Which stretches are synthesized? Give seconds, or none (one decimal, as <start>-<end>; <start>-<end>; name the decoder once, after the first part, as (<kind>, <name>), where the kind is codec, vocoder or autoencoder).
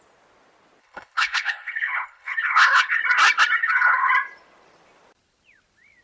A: 0.8-3.0 (codec, HILCodec); 3.6-4.1